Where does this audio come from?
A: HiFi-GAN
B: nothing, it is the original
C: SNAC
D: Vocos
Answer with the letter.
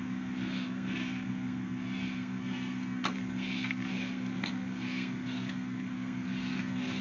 C